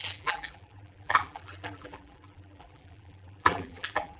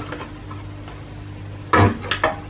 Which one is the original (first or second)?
second